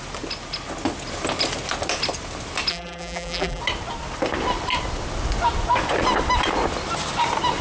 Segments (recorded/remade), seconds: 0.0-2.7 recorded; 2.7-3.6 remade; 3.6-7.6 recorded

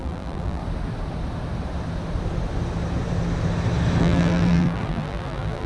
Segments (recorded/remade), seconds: 0.0-0.6 remade; 0.6-4.0 recorded; 4.0-5.7 remade

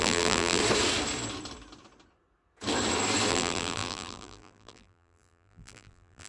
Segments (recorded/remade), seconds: 0.0-0.6 remade; 0.6-3.3 recorded; 3.3-6.3 remade

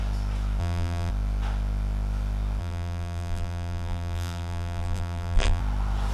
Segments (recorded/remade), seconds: 0.0-0.6 recorded; 0.6-1.1 remade; 1.1-2.6 recorded; 2.6-5.6 remade; 5.6-6.1 recorded

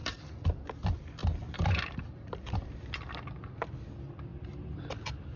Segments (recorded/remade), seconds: 0.0-0.7 remade; 0.7-1.2 recorded; 1.2-2.6 remade; 2.6-4.3 recorded; 4.3-5.4 remade

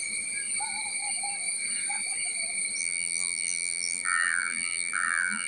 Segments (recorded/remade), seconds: 0.0-2.8 recorded; 2.8-5.5 remade

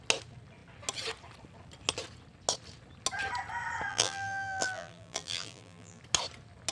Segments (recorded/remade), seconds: 0.0-3.9 recorded; 3.9-6.0 remade; 6.0-6.7 recorded